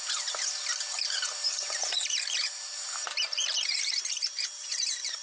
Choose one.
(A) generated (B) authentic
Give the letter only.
A